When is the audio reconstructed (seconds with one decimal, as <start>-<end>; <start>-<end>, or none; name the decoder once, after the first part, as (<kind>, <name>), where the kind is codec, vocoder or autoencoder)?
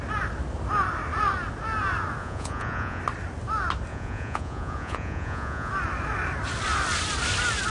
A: 2.2-3.0 (vocoder, Vocos); 3.9-5.7